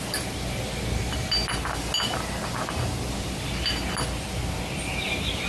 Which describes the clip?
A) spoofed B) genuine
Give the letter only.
B